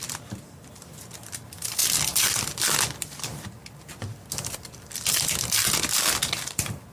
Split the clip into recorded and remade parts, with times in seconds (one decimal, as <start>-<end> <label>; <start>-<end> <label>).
0.0-6.9 recorded